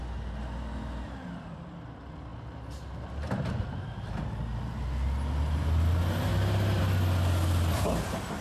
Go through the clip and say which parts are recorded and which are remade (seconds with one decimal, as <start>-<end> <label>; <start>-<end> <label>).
0.0-8.4 recorded